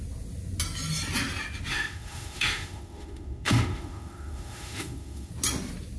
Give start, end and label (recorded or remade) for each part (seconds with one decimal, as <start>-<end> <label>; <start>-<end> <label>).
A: 0.0-1.7 recorded; 1.7-5.3 remade; 5.3-6.0 recorded